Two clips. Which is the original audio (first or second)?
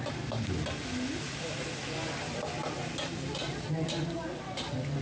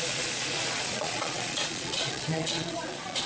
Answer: first